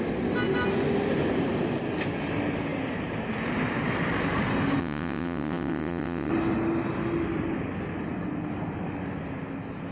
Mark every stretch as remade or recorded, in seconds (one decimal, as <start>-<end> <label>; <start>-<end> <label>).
0.0-4.8 recorded; 4.8-6.3 remade; 6.3-9.9 recorded